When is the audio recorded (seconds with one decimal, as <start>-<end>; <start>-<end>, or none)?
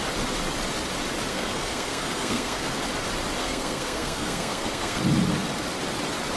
0.0-1.3; 2.7-3.4; 5.0-6.4